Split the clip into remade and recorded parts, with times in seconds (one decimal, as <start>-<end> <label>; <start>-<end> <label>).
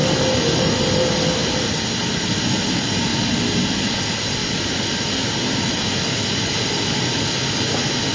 0.0-8.1 recorded